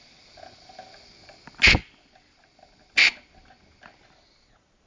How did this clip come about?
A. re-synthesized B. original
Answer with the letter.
B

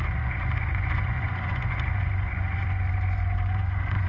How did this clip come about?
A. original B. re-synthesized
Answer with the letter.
B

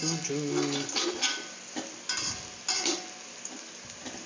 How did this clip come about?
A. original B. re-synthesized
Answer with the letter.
A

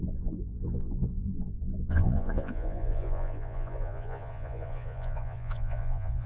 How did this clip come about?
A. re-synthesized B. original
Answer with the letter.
A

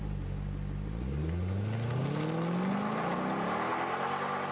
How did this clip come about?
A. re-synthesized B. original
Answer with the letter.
B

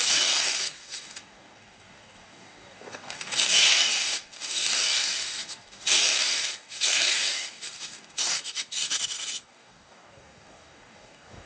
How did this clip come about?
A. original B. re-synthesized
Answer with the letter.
B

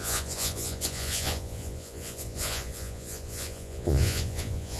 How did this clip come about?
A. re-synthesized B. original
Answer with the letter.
A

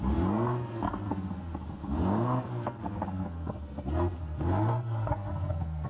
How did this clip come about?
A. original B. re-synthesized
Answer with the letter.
B